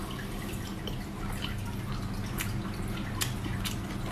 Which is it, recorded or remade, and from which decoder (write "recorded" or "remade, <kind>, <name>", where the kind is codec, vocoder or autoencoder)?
recorded